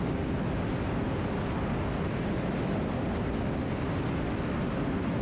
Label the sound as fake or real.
real